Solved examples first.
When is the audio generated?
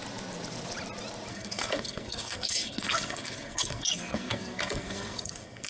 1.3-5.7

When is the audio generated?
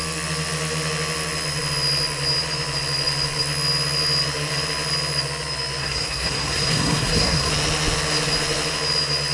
5.8-7.5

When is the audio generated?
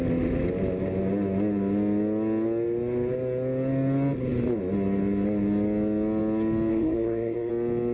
6.7-7.5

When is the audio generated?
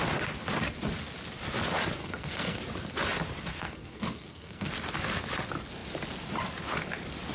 2.0-2.6; 3.5-4.7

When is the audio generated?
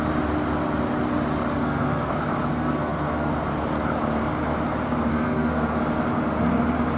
1.6-2.1; 2.5-3.3; 5.1-5.8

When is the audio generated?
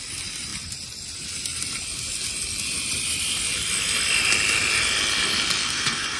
5.6-6.2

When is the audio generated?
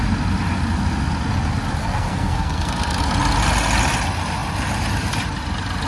1.8-3.0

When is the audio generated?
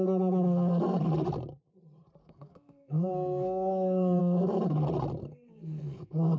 2.2-4.2; 5.2-6.4